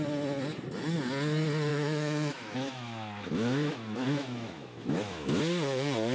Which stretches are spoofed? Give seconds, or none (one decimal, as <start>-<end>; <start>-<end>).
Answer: 1.7-5.4